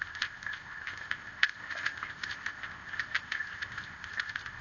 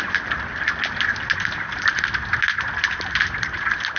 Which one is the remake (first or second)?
first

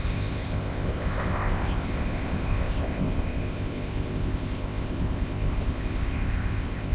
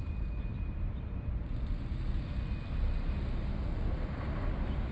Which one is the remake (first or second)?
first